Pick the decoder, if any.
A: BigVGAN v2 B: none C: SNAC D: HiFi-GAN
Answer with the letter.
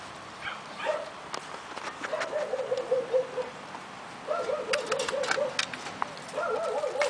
B